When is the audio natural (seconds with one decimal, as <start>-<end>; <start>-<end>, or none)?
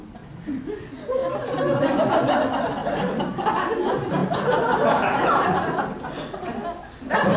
0.0-2.8; 3.4-7.4